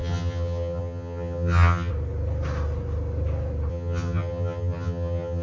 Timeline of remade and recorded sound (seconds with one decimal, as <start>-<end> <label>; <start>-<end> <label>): 0.0-1.9 remade; 1.9-3.7 recorded; 3.7-5.4 remade